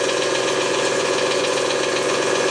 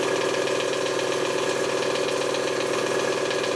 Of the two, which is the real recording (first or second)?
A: second